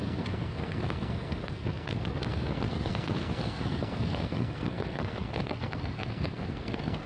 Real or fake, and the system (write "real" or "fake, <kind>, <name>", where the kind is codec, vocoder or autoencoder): fake, codec, SNAC